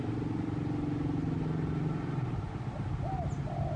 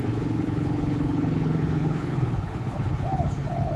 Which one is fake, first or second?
second